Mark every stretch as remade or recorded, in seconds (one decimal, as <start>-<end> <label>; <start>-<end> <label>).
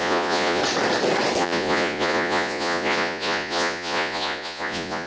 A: 0.0-0.6 remade; 0.6-1.4 recorded; 1.4-5.1 remade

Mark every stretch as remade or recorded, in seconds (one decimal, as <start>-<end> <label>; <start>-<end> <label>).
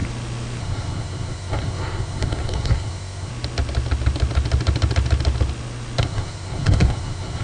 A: 0.0-0.6 recorded; 0.6-3.3 remade; 3.3-6.0 recorded; 6.0-7.4 remade